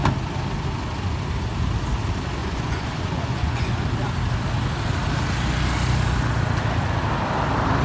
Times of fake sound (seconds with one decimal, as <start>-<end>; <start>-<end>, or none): 2.4-3.7